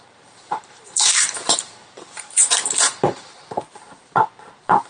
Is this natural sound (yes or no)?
no